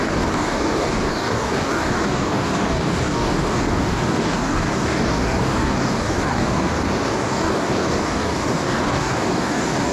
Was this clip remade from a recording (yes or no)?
yes